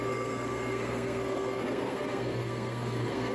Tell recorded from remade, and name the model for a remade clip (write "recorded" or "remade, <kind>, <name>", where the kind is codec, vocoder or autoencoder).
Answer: remade, codec, SNAC